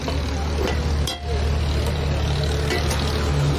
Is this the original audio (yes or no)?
yes